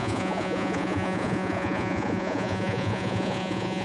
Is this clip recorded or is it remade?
remade